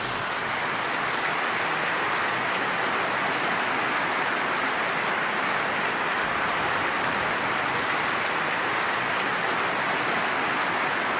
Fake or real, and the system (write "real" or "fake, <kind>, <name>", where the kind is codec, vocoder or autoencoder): real